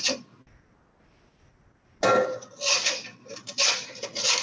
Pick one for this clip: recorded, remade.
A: recorded